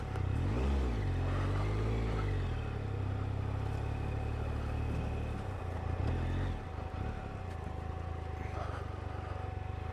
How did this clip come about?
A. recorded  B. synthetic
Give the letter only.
A